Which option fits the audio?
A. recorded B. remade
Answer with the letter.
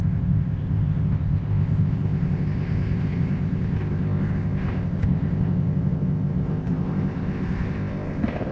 B